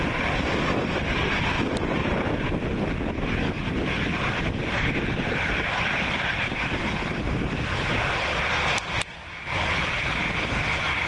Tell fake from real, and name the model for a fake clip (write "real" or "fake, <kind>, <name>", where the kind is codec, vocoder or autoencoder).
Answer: real